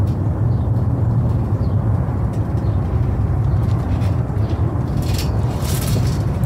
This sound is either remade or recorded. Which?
remade